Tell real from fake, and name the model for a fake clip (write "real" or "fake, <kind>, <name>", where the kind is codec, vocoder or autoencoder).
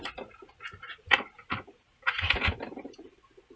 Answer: real